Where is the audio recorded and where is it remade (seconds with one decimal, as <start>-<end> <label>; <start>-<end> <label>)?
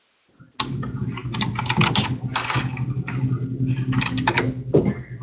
0.0-5.2 recorded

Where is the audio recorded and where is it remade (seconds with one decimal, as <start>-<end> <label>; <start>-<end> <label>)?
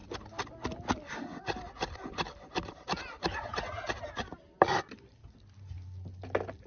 0.0-4.0 recorded; 4.0-5.2 remade; 5.2-6.7 recorded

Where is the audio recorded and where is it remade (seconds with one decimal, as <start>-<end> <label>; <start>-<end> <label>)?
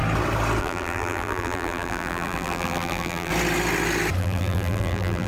0.0-0.6 recorded; 0.6-3.3 remade; 3.3-4.2 recorded; 4.2-5.3 remade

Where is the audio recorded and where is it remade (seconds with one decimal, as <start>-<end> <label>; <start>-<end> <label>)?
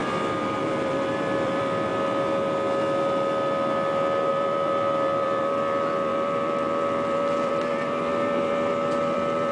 0.0-1.9 remade; 1.9-4.3 recorded; 4.3-9.5 remade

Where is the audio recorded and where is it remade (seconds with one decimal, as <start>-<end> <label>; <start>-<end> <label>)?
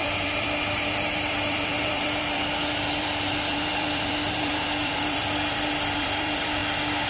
0.0-6.6 remade; 6.6-7.1 recorded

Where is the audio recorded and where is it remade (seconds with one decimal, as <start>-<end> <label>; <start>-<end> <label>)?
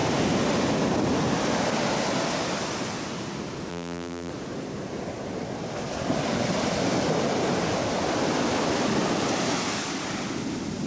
0.0-3.7 recorded; 3.7-4.3 remade; 4.3-10.9 recorded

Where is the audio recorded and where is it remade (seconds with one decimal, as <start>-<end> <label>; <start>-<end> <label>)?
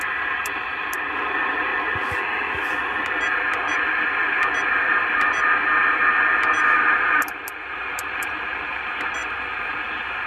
0.0-1.7 remade; 1.7-6.8 recorded; 6.8-10.3 remade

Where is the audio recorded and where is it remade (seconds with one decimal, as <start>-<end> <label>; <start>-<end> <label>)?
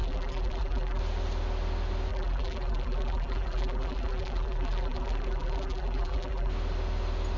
0.0-1.0 remade; 1.0-2.1 recorded; 2.1-6.5 remade; 6.5-7.4 recorded